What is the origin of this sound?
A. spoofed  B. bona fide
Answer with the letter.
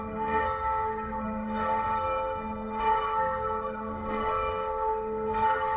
A